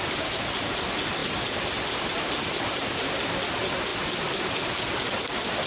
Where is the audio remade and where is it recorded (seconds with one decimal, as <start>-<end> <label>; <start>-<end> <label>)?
0.0-1.2 recorded; 1.2-1.7 remade; 1.7-2.1 recorded; 2.1-3.3 remade; 3.3-5.7 recorded